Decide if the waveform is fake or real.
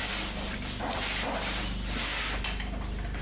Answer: real